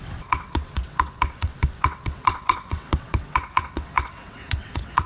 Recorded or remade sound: remade